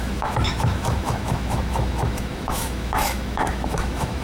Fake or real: fake